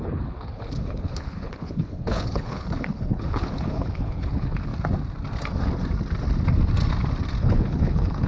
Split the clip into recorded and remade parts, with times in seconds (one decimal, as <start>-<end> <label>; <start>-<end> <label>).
0.0-4.7 remade; 4.7-7.4 recorded; 7.4-8.3 remade